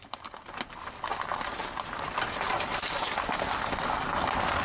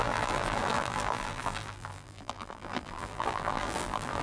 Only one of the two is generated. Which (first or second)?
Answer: second